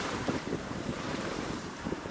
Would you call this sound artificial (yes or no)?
yes